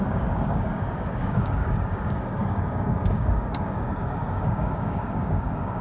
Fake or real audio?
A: fake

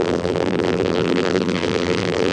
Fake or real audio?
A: fake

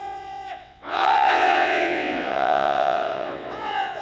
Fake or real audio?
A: fake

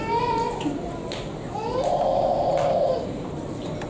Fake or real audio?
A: real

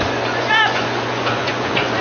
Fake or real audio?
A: fake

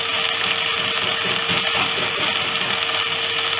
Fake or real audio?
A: real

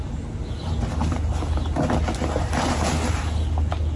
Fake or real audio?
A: real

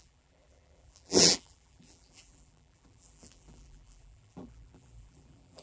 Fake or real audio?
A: fake